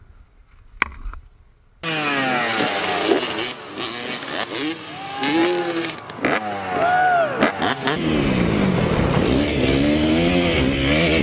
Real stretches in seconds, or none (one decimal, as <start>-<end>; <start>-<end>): 0.0-11.2